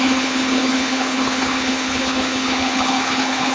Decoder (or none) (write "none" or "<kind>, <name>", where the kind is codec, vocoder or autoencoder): codec, HILCodec